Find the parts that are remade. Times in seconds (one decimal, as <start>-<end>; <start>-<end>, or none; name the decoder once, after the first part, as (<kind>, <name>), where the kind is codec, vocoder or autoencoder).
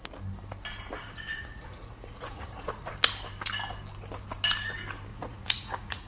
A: 1.0-2.9 (vocoder, Vocos); 5.1-6.1